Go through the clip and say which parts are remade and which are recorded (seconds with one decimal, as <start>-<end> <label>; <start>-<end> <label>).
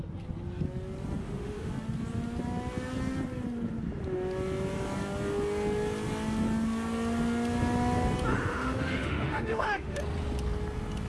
0.0-1.2 recorded; 1.2-1.7 remade; 1.7-8.3 recorded; 8.3-10.0 remade; 10.0-11.1 recorded